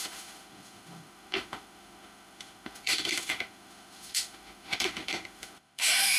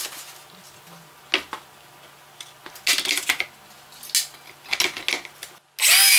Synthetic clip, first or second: first